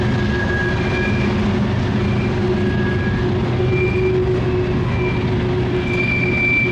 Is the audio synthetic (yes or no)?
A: no